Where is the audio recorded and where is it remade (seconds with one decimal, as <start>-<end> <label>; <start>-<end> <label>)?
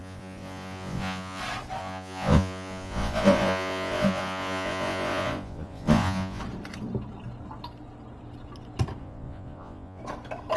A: 0.0-1.4 remade; 1.4-1.8 recorded; 1.8-6.4 remade; 6.4-9.0 recorded; 9.0-10.0 remade; 10.0-10.6 recorded